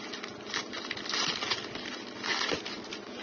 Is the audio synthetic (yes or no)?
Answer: no